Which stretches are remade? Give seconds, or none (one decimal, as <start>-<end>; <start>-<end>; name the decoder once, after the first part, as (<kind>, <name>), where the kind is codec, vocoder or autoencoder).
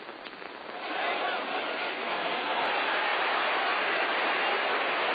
1.9-2.7 (codec, SNAC)